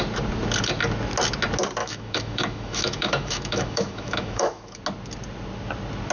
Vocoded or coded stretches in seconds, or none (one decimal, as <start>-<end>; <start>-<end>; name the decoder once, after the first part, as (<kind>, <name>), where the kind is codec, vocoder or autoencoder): 1.8-4.8 (autoencoder, DAC-VAE)